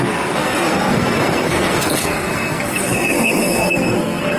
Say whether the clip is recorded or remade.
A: remade